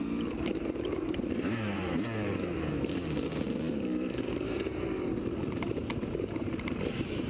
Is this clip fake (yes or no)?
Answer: yes